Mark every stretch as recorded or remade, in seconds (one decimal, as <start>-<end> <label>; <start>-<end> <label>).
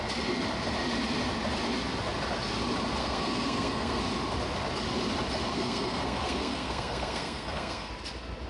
0.0-3.0 recorded; 3.0-4.0 remade; 4.0-5.5 recorded; 5.5-7.9 remade; 7.9-8.5 recorded